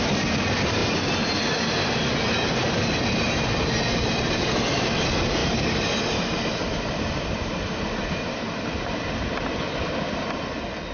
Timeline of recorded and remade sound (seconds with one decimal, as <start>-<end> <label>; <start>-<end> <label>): 0.0-5.4 recorded; 5.4-9.3 remade; 9.3-10.9 recorded